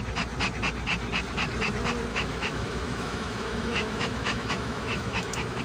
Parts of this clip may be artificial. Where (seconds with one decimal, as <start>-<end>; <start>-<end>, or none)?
2.1-5.6